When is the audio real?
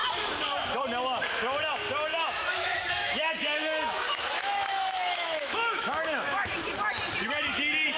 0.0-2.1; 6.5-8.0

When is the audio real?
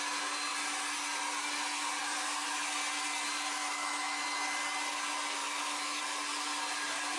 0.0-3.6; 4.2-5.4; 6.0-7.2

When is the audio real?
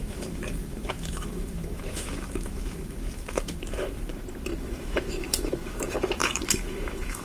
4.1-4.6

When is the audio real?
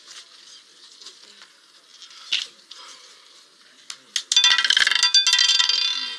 0.0-6.2